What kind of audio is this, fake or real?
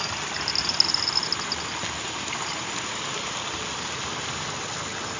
real